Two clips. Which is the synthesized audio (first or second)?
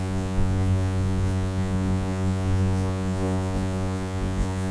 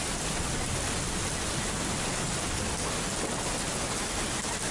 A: first